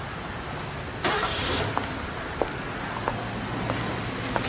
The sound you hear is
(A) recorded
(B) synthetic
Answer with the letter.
A